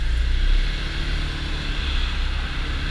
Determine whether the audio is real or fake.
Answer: real